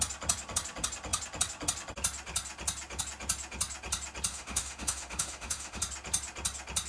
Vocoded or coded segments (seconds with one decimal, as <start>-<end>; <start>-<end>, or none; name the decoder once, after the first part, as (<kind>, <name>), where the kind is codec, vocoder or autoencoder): 4.3-5.8 (autoencoder, DAC-VAE)